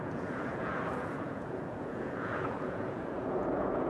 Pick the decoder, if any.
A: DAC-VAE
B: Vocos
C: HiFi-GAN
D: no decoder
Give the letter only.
B